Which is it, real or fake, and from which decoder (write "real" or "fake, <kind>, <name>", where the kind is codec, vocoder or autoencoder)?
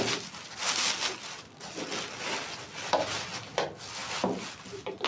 real